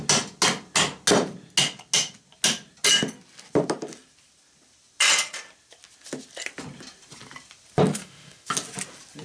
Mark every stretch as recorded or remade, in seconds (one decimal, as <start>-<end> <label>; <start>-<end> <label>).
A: 0.0-7.9 recorded; 7.9-8.5 remade; 8.5-9.2 recorded